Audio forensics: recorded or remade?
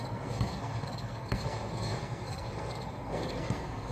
remade